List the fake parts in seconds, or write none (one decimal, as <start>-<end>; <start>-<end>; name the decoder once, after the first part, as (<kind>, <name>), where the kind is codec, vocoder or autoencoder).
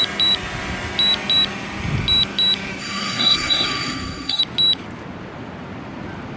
2.8-4.4 (codec, SNAC)